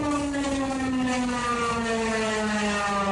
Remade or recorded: recorded